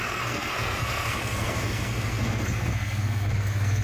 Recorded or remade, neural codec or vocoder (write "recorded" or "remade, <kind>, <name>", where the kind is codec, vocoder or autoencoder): remade, codec, SNAC